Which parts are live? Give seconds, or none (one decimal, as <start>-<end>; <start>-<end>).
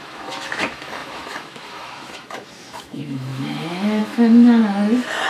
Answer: 4.6-5.3